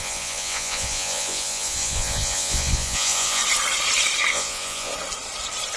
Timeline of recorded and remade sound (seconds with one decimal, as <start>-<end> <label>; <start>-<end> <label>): 0.0-3.4 remade; 3.4-4.3 recorded; 4.3-4.9 remade; 4.9-5.8 recorded